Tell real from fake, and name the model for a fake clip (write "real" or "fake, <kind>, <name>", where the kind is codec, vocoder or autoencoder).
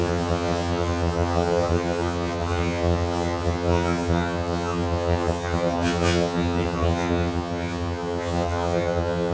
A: fake, vocoder, HiFi-GAN